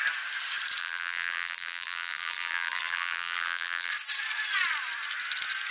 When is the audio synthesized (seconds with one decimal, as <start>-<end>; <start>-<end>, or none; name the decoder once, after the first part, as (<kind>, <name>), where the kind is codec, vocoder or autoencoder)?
0.8-3.9 (vocoder, BigVGAN v2)